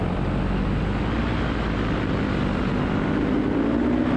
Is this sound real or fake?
real